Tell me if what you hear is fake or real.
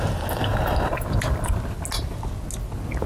real